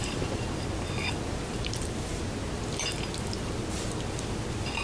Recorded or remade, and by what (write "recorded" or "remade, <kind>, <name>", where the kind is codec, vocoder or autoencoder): recorded